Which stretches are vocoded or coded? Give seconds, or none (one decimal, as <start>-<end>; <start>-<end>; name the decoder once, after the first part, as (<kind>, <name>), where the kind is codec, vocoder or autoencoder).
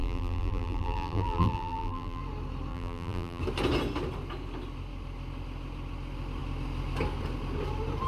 0.0-2.2 (vocoder, BigVGAN v2); 2.7-3.4